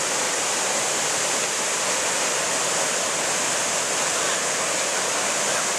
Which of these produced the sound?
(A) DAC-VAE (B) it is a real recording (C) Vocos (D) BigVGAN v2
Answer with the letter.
B